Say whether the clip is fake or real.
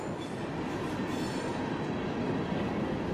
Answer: real